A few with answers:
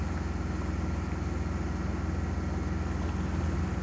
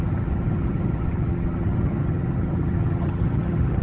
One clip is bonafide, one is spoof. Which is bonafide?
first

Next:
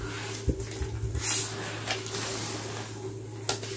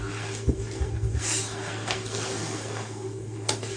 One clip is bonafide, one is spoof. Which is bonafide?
first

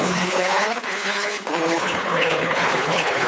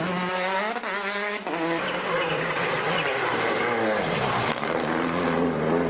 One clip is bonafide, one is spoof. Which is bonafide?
second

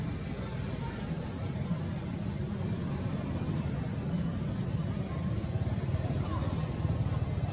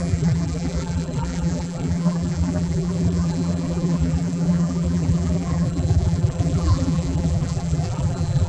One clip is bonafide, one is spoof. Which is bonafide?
first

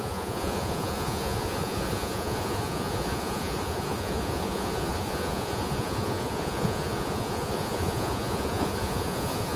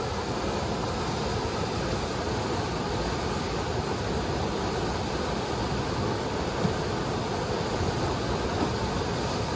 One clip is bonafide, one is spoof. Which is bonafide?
second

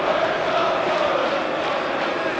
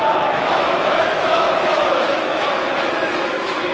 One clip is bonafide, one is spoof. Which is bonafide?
first